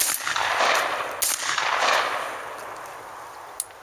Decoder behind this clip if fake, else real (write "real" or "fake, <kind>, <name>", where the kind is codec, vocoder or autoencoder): real